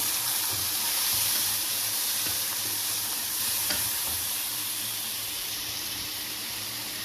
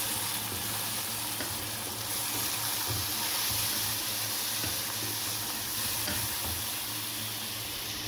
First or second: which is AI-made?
first